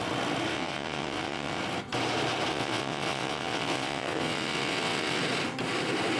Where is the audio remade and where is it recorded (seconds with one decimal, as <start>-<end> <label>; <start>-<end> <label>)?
0.0-0.5 recorded; 0.5-1.6 remade; 1.6-2.5 recorded; 2.5-5.2 remade; 5.2-6.2 recorded